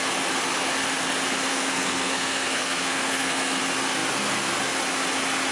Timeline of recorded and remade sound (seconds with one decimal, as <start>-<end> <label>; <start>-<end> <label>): 0.0-1.5 recorded; 1.5-3.6 remade; 3.6-5.5 recorded